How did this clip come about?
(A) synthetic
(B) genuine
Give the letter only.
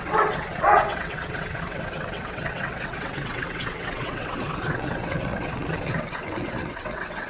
A